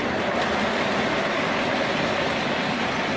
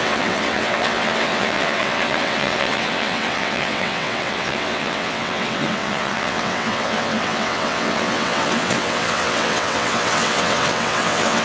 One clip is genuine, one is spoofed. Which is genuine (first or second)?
first